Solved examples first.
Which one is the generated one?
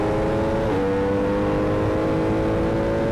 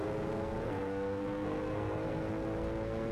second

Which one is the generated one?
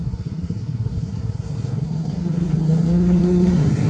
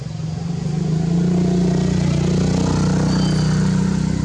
first